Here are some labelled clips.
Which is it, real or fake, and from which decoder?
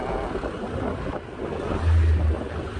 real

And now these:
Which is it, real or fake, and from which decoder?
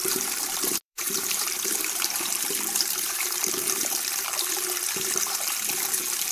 fake, vocoder, BigVGAN v2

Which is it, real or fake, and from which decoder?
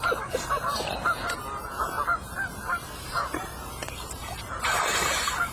fake, vocoder, BigVGAN v2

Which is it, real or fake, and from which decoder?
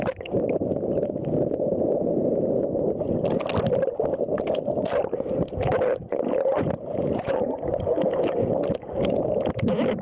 real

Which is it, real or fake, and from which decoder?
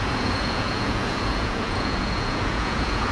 fake, vocoder, Vocos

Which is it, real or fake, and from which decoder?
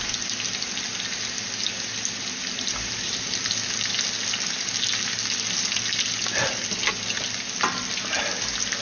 real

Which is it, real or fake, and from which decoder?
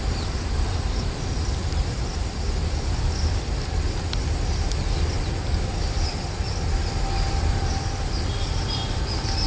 real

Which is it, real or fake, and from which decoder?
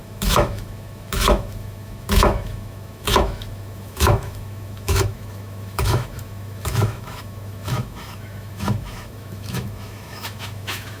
fake, autoencoder, DAC-VAE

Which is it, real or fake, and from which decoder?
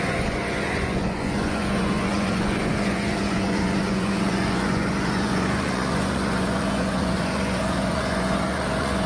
fake, vocoder, Vocos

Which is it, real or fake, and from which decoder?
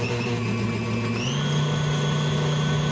real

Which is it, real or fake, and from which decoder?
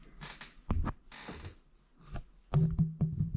real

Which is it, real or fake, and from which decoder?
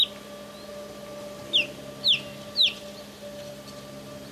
real